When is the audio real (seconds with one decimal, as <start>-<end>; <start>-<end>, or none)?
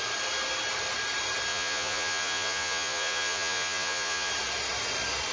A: 0.0-1.5; 4.3-5.3